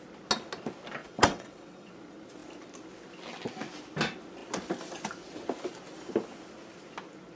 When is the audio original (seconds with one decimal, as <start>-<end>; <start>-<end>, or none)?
0.0-1.0; 1.9-7.4